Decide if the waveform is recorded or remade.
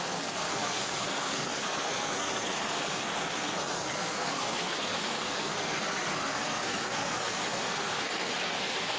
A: remade